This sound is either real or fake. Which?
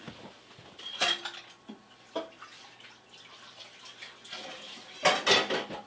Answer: real